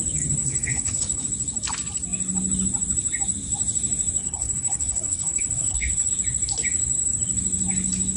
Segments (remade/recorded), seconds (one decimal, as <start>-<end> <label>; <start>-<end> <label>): 0.0-0.4 recorded; 0.4-1.2 remade; 1.2-4.2 recorded; 4.2-6.1 remade; 6.1-8.2 recorded

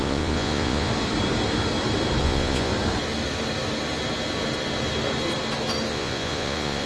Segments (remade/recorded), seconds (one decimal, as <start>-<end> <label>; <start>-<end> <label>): 0.0-0.9 remade; 0.9-2.2 recorded; 2.2-2.7 remade; 2.7-5.9 recorded; 5.9-6.9 remade

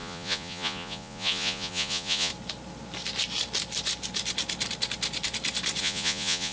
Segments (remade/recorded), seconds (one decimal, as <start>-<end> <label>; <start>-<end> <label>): 0.0-2.3 remade; 2.3-5.8 recorded; 5.8-6.5 remade

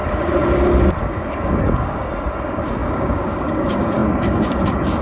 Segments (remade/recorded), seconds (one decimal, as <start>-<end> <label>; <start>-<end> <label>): 0.0-1.0 recorded; 1.0-5.0 remade

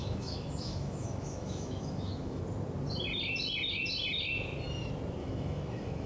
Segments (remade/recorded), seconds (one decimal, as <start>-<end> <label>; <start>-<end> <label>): 0.0-2.4 remade; 2.4-5.2 recorded; 5.2-6.1 remade

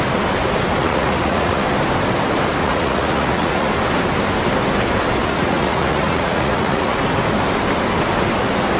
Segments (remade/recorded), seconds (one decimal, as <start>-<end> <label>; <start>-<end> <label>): 0.0-0.8 recorded; 0.8-1.7 remade; 1.7-2.6 recorded; 2.6-3.7 remade; 3.7-5.2 recorded; 5.2-7.0 remade; 7.0-8.8 recorded

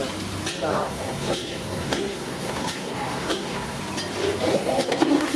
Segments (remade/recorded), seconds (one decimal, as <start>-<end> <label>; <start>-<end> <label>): 0.0-0.7 recorded; 0.7-3.8 remade; 3.8-4.5 recorded; 4.5-5.4 remade